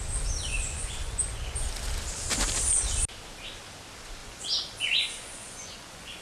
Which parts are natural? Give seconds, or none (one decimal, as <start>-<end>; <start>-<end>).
0.0-0.5; 1.7-4.2